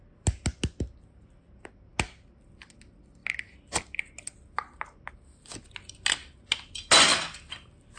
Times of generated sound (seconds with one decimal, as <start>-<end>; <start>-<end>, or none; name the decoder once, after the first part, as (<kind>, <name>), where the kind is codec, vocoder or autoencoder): none